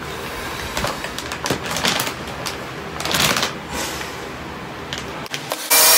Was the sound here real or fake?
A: real